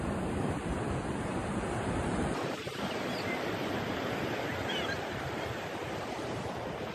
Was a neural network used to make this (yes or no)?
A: yes